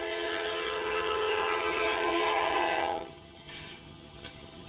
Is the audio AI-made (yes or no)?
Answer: yes